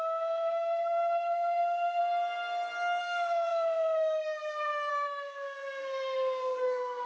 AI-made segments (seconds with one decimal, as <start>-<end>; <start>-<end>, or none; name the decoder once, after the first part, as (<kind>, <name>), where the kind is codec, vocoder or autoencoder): 0.0-2.0 (codec, SNAC); 3.0-7.1